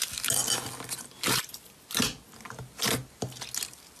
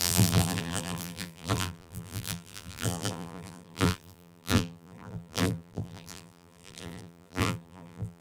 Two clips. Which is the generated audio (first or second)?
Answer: second